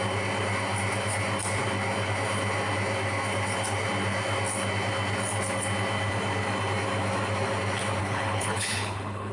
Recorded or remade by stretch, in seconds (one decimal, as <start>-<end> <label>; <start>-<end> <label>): 0.0-8.0 recorded; 8.0-9.3 remade